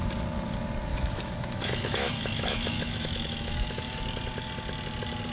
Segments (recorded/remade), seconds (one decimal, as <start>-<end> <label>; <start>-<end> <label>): 0.0-0.9 recorded; 0.9-4.1 remade; 4.1-5.3 recorded